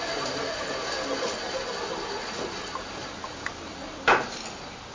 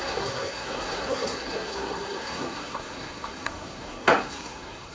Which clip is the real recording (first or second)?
first